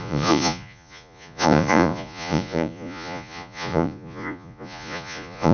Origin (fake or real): fake